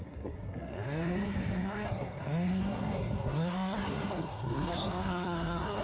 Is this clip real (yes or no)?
no